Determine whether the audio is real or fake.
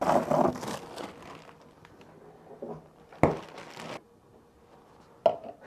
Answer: real